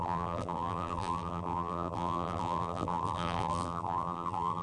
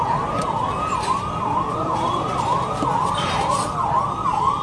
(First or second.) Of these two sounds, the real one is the second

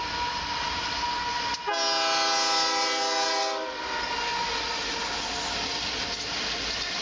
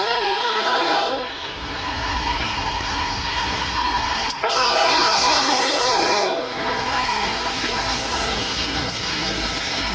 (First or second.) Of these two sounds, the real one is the first